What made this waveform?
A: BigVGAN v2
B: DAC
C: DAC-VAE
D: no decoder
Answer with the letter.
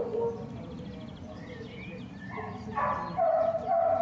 D